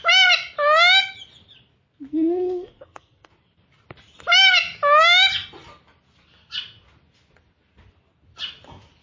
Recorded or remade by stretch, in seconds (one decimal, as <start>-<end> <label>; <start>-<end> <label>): 0.0-2.1 recorded; 2.1-3.3 remade; 3.3-9.0 recorded